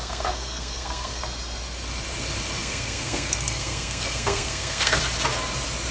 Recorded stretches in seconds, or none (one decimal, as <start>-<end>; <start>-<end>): 1.2-2.6; 5.0-5.9